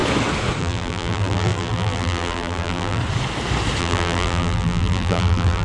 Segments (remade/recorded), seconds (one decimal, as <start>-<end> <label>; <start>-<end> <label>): 0.0-0.6 recorded; 0.6-3.0 remade; 3.0-3.8 recorded; 3.8-5.6 remade